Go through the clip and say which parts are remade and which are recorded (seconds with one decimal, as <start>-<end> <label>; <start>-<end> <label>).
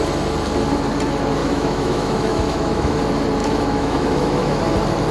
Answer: 0.0-1.4 recorded; 1.4-3.0 remade; 3.0-3.4 recorded; 3.4-4.6 remade; 4.6-5.1 recorded